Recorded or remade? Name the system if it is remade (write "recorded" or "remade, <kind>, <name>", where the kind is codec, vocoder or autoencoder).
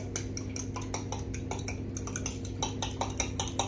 recorded